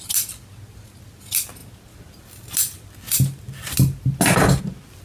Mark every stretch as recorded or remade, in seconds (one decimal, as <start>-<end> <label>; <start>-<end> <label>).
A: 0.0-5.0 recorded